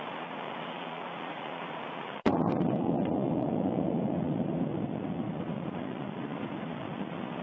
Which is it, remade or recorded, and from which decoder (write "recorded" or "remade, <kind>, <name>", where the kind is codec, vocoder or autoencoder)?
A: remade, vocoder, Vocos